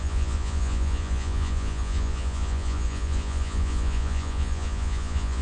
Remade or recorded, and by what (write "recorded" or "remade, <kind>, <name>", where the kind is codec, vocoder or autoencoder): remade, vocoder, Vocos